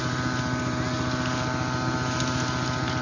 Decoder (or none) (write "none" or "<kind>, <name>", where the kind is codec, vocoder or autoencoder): none